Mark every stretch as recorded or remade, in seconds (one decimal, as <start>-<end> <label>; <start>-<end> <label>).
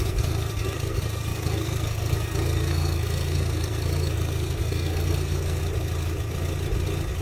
0.0-5.6 remade; 5.6-7.2 recorded